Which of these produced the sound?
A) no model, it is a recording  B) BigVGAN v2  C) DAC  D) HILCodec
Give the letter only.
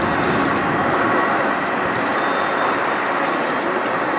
A